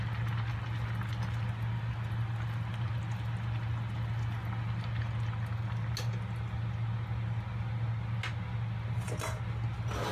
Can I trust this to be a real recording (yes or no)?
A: yes